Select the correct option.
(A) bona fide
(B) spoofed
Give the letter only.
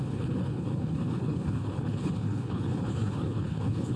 B